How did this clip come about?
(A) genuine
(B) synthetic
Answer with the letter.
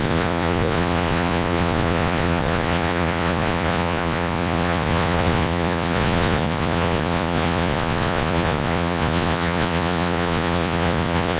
B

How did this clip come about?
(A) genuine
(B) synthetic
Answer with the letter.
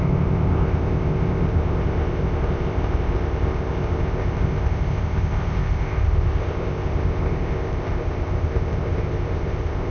B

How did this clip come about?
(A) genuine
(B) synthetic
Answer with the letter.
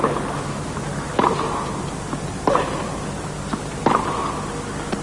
A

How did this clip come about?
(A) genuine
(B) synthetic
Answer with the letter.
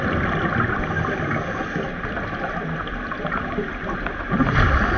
A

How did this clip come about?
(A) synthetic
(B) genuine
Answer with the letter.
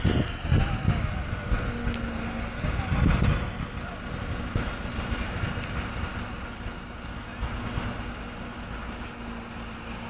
B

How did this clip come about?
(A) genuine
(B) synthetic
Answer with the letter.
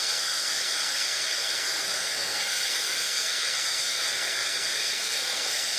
B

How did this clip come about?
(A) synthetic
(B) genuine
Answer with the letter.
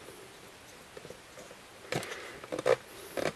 B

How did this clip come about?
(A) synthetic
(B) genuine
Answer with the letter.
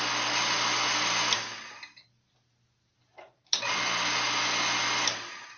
B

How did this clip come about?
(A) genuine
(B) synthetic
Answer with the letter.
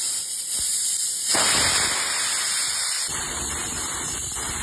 B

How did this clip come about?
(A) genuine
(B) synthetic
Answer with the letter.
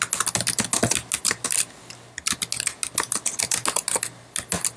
A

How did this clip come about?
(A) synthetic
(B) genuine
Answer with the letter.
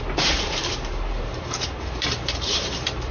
A